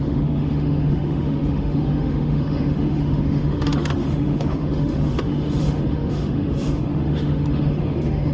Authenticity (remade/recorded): remade